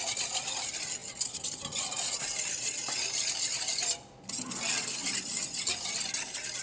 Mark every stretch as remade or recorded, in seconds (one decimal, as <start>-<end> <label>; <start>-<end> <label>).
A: 0.0-6.6 recorded